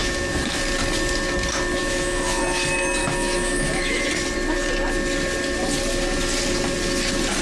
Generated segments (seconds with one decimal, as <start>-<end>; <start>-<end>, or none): 0.0-0.6; 1.8-2.4; 3.0-4.1